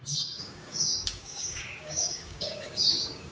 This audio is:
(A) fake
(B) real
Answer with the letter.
A